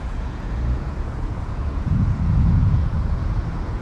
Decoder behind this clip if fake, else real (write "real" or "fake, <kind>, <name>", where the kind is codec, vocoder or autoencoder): fake, vocoder, Vocos